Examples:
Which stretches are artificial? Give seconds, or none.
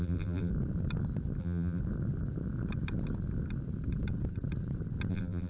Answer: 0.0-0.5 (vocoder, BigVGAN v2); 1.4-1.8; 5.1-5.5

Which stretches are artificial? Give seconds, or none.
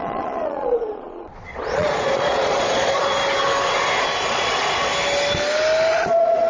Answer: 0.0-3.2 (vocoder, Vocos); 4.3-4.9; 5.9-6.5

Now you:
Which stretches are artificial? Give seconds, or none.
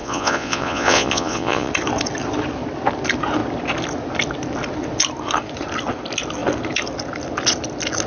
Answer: 0.0-1.7 (vocoder, Vocos)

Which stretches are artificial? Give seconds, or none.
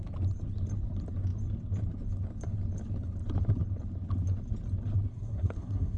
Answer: 5.1-6.0 (codec, SNAC)